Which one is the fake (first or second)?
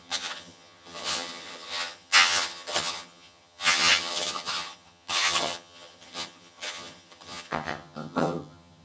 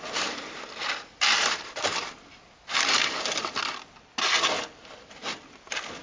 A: first